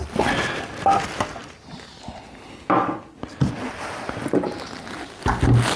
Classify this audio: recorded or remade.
recorded